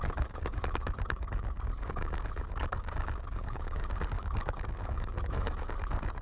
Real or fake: fake